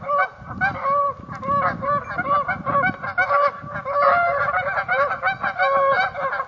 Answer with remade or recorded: recorded